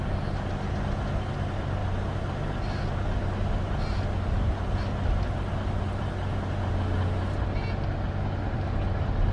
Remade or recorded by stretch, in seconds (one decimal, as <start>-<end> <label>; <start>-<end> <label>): 0.0-9.3 recorded